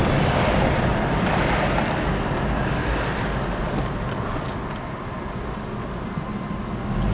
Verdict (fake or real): real